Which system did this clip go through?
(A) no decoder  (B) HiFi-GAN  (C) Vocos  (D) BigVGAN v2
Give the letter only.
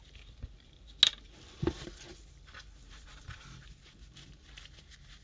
A